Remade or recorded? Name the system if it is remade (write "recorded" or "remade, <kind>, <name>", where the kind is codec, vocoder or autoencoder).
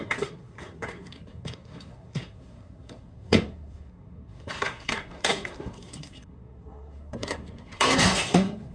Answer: remade, codec, SNAC